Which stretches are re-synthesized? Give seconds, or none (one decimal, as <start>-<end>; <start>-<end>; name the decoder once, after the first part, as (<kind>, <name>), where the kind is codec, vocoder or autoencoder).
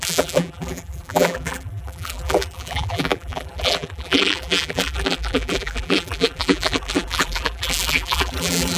0.0-8.8 (vocoder, BigVGAN v2)